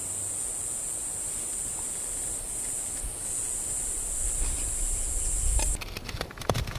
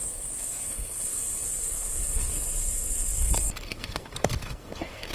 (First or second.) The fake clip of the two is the second